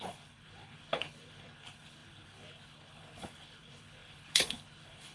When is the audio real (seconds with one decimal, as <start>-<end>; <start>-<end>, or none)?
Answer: none